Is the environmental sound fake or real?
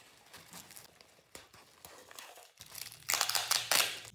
real